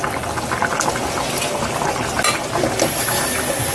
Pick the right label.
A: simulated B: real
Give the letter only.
B